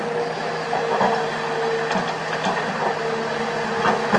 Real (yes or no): yes